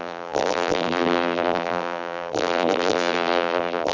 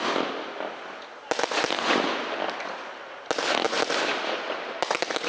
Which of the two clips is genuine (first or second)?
second